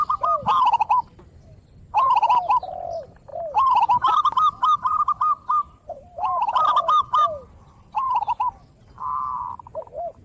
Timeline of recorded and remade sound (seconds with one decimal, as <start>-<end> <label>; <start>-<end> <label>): 0.0-10.2 recorded